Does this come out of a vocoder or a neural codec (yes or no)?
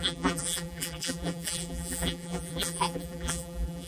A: yes